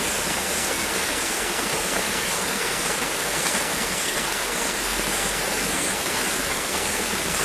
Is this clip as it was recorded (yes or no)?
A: no